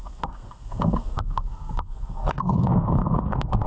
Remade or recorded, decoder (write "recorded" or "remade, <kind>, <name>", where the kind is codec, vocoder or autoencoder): remade, codec, SNAC